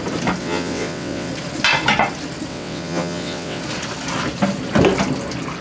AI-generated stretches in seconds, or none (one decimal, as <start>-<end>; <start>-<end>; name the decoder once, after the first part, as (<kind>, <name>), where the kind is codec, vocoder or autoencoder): 0.4-1.3 (vocoder, WaveNeXt); 2.5-3.6

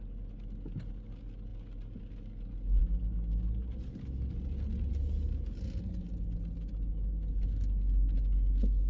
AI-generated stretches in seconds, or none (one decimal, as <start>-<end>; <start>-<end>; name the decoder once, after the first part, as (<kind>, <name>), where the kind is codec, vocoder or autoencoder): none